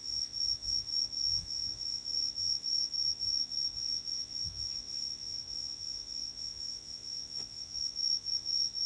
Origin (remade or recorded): remade